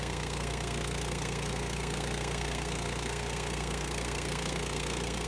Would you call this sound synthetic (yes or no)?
yes